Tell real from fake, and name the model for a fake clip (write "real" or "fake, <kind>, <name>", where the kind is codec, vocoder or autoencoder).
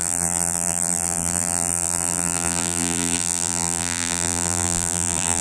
fake, vocoder, BigVGAN v2